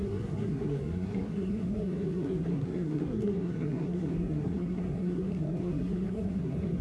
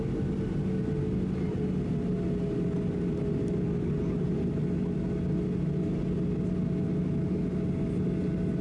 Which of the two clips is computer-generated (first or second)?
first